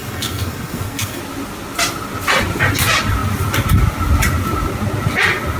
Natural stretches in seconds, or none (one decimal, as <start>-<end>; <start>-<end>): 1.2-5.6